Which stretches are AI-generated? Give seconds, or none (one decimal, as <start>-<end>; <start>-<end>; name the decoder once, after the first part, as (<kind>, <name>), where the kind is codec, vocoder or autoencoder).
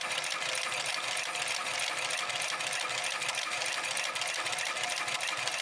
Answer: none